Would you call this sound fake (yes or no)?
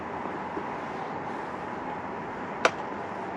no